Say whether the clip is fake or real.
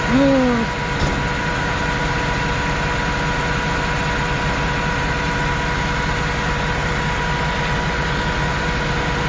real